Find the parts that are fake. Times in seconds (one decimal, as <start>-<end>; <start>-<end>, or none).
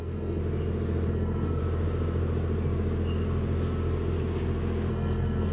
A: 0.0-0.4; 1.1-1.6; 4.9-5.5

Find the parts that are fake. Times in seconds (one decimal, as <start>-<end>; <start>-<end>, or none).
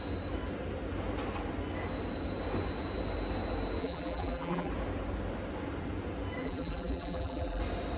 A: 3.8-4.7; 6.4-7.6